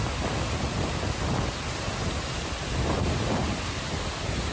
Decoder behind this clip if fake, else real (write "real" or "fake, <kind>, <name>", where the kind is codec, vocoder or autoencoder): real